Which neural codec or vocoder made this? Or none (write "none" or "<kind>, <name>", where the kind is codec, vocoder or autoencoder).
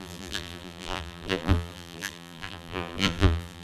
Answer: vocoder, BigVGAN v2